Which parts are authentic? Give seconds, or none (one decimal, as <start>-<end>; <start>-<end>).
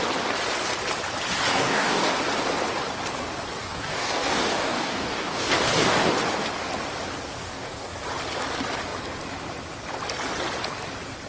0.0-1.5; 2.1-3.6; 5.7-7.4; 8.0-11.3